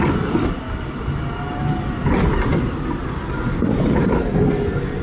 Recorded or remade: recorded